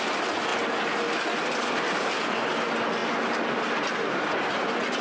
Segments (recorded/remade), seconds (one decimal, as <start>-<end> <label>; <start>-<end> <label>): 0.0-5.0 recorded